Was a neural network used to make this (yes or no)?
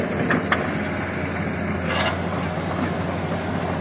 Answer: no